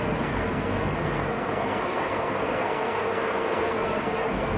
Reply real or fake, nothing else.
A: fake